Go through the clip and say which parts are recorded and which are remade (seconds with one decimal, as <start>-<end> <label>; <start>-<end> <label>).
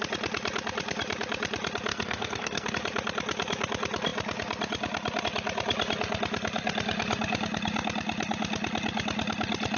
0.0-1.9 recorded; 1.9-2.7 remade; 2.7-9.8 recorded